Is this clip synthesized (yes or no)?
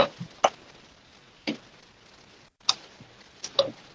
no